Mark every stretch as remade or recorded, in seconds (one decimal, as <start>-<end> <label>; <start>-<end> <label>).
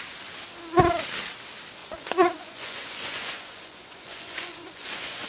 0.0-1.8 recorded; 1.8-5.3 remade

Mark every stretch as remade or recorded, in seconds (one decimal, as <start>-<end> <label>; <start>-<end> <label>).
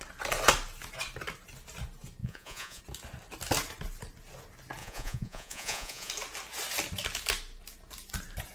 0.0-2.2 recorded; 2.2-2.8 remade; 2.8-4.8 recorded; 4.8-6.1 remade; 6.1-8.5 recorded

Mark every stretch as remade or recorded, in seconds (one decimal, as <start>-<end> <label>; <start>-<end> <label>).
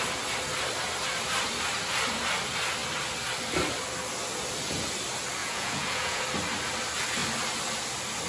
0.0-5.4 recorded; 5.4-6.2 remade; 6.2-8.3 recorded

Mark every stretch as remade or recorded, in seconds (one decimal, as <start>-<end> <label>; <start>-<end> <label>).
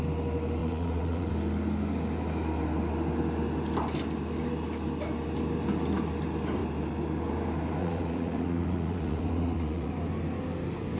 0.0-0.6 recorded; 0.6-1.3 remade; 1.3-7.8 recorded; 7.8-9.9 remade; 9.9-11.0 recorded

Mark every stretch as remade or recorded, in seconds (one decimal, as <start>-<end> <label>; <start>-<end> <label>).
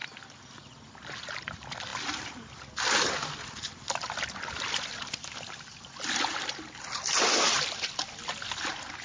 0.0-9.0 recorded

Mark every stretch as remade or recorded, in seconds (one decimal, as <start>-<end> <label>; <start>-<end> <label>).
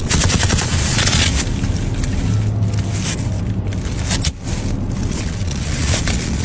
0.0-1.3 remade; 1.3-5.1 recorded; 5.1-6.4 remade